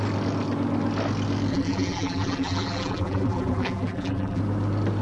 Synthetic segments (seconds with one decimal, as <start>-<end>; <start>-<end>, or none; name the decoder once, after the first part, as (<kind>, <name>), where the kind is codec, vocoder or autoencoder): 1.5-4.4 (vocoder, BigVGAN v2)